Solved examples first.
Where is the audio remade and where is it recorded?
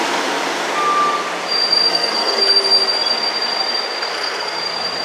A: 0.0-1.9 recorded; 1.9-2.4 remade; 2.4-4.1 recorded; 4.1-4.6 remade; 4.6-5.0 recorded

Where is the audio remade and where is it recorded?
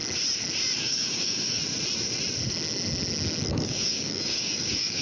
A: 0.0-0.8 recorded; 0.8-1.6 remade; 1.6-3.5 recorded; 3.5-5.0 remade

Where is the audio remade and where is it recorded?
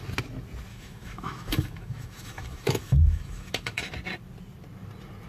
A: 0.0-0.7 recorded; 0.7-3.9 remade; 3.9-5.3 recorded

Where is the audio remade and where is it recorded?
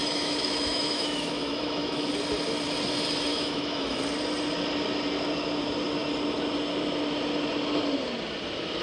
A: 0.0-2.1 remade; 2.1-3.3 recorded; 3.3-4.0 remade; 4.0-8.8 recorded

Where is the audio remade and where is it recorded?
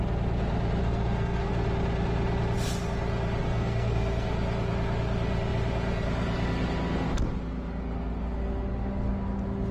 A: 0.0-0.8 recorded; 0.8-1.5 remade; 1.5-3.4 recorded; 3.4-4.3 remade; 4.3-9.7 recorded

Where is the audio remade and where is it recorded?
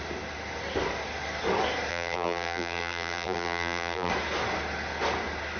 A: 0.0-1.9 recorded; 1.9-4.1 remade; 4.1-5.6 recorded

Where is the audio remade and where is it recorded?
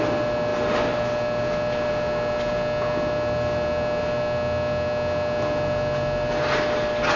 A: 0.0-7.2 recorded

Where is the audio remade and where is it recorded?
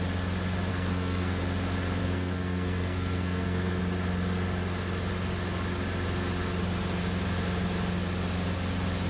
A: 0.0-0.7 recorded; 0.7-1.4 remade; 1.4-2.0 recorded; 2.0-3.8 remade; 3.8-9.1 recorded